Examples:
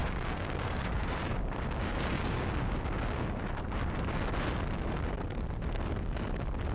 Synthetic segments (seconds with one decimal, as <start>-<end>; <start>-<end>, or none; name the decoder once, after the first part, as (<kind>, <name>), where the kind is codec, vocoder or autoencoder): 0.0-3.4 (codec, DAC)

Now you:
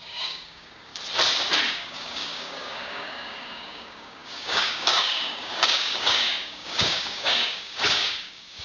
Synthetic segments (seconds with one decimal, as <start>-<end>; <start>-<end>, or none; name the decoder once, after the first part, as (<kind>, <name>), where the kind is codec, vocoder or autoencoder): 0.0-0.9 (codec, DAC); 1.7-8.6

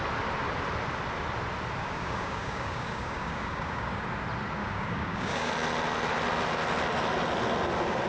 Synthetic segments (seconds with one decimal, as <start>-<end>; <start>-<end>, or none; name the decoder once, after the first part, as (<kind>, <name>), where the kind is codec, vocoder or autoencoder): 1.8-4.0 (codec, DAC); 4.6-5.5

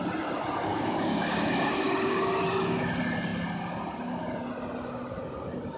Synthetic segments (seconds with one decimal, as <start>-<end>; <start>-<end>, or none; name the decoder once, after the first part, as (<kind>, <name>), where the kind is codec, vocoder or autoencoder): 0.7-2.8 (codec, DAC)

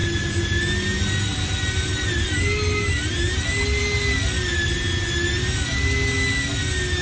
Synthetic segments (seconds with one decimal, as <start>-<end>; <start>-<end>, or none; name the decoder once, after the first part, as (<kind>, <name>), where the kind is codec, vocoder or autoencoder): none